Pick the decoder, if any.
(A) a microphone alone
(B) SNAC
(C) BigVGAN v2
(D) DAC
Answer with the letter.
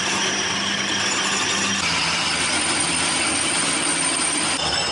A